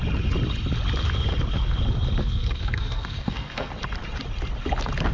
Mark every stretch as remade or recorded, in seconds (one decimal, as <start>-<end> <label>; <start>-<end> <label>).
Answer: 0.0-2.2 recorded; 2.2-3.7 remade; 3.7-5.1 recorded